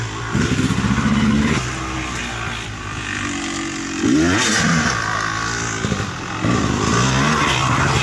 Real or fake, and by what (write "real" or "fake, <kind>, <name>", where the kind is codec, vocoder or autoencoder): real